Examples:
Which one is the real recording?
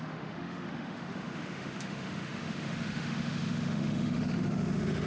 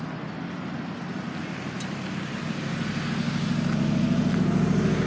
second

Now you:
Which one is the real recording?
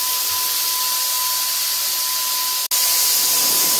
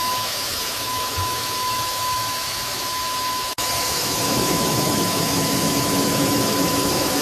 first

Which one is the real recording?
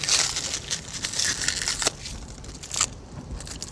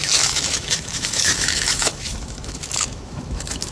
first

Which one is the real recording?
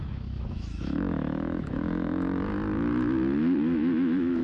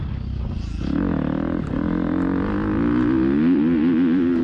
second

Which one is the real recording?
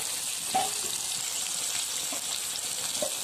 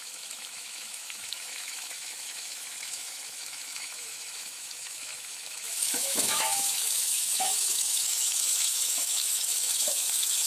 first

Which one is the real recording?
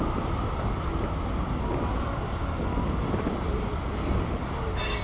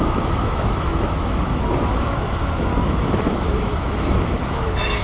first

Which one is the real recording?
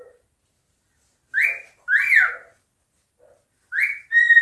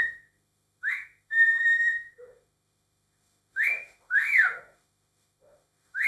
first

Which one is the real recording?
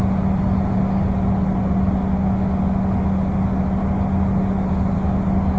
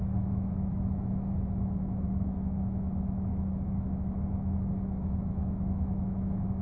first